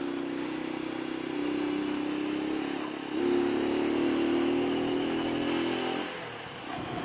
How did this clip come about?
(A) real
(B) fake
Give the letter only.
A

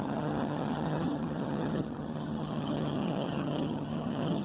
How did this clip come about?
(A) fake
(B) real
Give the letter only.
A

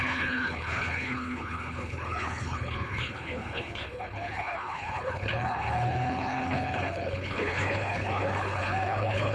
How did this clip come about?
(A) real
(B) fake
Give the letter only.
B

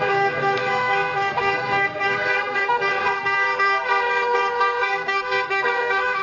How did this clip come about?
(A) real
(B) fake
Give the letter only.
B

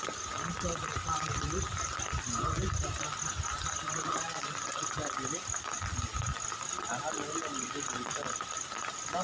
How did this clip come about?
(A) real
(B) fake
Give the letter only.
A